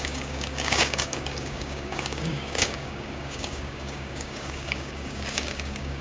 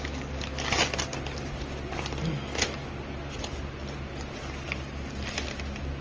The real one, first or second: second